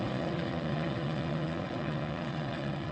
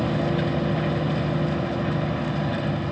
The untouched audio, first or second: second